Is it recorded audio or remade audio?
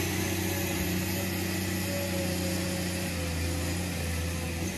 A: recorded